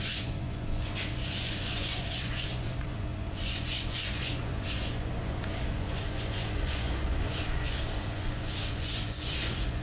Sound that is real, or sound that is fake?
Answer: fake